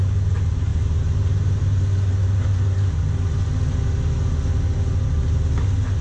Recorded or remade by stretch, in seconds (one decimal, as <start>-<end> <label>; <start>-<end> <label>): 0.0-6.0 recorded